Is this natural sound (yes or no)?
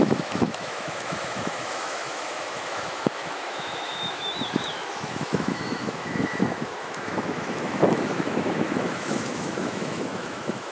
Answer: no